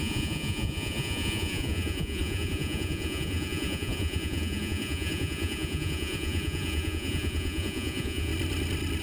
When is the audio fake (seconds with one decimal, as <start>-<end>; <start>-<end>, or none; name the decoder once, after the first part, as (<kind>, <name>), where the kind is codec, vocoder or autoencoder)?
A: 0.0-8.3 (vocoder, Vocos)